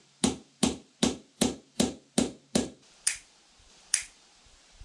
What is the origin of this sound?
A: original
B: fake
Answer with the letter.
B